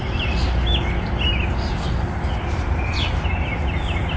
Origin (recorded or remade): recorded